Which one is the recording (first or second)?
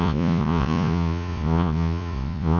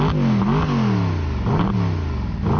second